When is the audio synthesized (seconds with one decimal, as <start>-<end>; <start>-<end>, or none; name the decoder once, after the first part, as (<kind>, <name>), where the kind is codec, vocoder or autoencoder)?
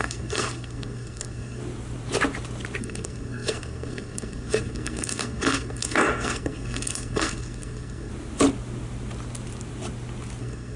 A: 0.0-1.6 (codec, SNAC); 2.8-8.1; 10.4-10.8